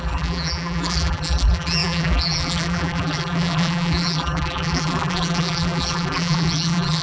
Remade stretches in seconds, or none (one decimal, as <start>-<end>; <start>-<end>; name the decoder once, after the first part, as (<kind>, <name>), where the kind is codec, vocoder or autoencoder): 0.0-7.0 (vocoder, BigVGAN v2)